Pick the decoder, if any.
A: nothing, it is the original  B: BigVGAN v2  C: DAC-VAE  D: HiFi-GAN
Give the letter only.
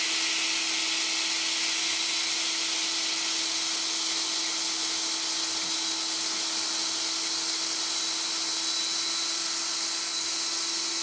A